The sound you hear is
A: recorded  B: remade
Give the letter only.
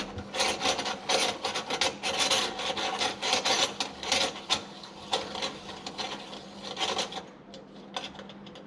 A